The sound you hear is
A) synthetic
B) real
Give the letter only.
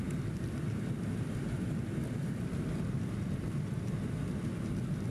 A